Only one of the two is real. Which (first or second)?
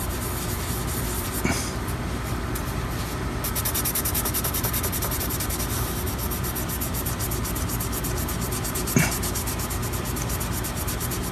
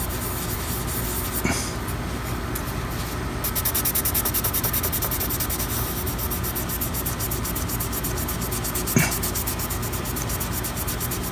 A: second